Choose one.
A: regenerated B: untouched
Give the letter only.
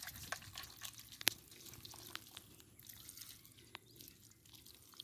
B